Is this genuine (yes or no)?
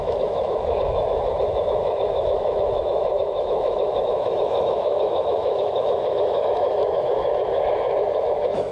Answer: no